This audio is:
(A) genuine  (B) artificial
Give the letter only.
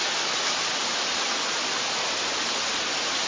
A